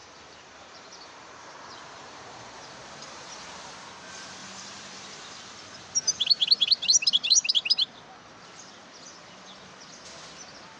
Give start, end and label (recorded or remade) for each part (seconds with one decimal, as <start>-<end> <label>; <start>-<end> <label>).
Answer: 0.0-3.7 remade; 3.7-4.4 recorded; 4.4-5.6 remade; 5.6-10.8 recorded